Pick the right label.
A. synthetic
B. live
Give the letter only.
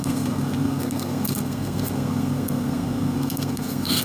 A